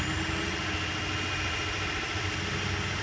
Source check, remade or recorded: recorded